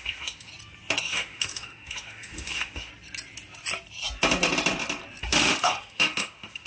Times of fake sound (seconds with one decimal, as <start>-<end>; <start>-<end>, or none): 0.0-0.5; 1.0-2.9; 5.2-6.7